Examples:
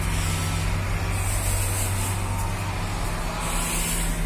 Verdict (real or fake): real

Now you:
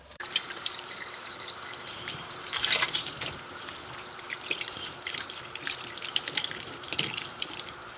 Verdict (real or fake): fake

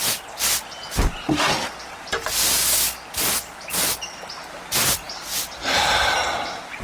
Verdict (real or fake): real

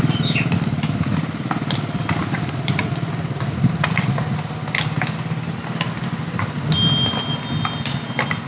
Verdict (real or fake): real